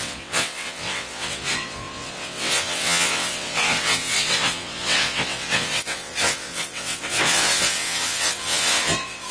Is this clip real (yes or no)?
no